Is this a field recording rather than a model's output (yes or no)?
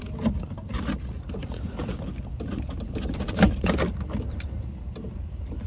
yes